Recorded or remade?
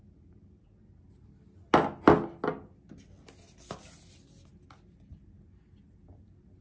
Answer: recorded